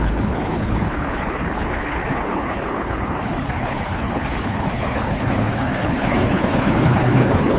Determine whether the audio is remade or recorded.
remade